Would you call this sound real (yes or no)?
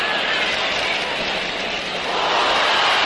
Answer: yes